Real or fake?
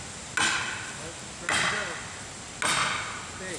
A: real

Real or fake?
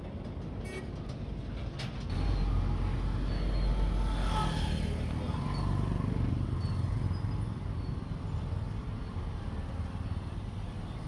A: real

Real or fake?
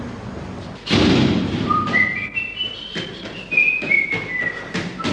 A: real